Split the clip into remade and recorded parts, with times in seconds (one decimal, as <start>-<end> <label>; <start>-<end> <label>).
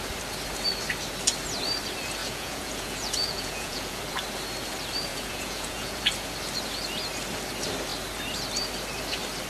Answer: 0.0-2.2 recorded; 2.2-4.0 remade; 4.0-5.1 recorded; 5.1-6.0 remade; 6.0-9.5 recorded